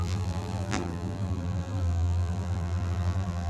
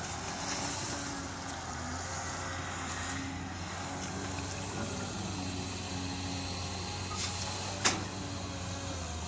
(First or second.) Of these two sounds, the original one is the second